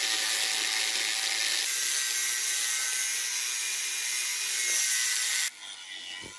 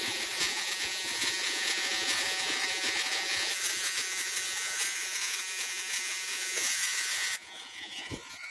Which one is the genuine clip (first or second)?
first